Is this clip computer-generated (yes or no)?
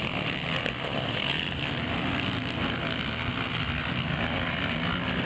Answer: no